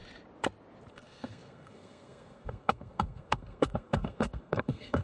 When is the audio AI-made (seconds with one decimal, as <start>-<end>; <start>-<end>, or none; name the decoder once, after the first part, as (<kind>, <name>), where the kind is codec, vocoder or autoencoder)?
0.9-5.0 (codec, SNAC)